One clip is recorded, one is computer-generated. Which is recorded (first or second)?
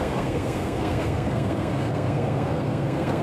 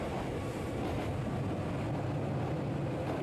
second